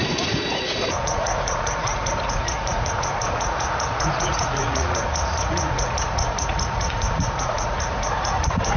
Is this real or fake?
fake